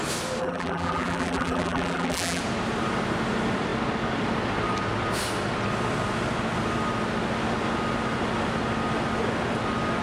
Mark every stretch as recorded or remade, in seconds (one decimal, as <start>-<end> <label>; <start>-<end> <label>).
0.0-0.4 recorded; 0.4-2.4 remade; 2.4-10.0 recorded